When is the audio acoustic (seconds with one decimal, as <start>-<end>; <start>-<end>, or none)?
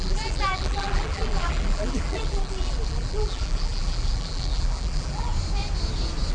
5.3-6.3